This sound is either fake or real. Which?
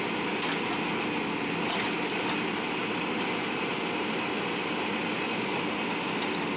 real